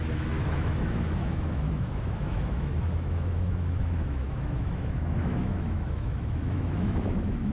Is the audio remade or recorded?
remade